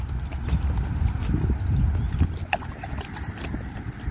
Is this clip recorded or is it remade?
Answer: recorded